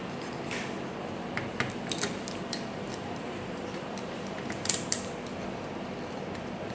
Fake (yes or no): yes